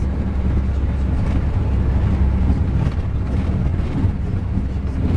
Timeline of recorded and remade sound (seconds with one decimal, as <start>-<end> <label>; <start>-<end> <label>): 0.0-3.7 recorded; 3.7-4.4 remade; 4.4-5.2 recorded